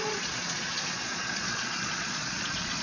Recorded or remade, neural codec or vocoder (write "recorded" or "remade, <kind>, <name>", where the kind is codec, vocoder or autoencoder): remade, vocoder, Vocos